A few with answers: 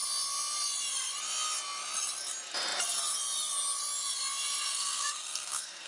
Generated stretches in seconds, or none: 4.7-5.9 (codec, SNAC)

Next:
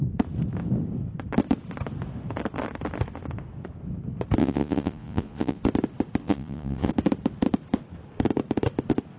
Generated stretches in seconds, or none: 4.4-5.6 (vocoder, Vocos); 6.2-6.9